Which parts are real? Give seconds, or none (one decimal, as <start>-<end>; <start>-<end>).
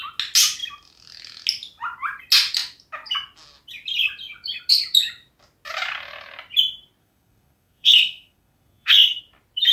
0.0-7.0; 9.2-9.7